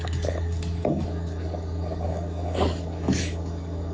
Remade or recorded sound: remade